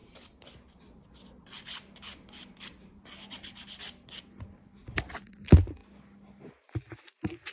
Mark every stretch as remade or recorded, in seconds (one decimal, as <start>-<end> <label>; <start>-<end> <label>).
0.0-7.5 recorded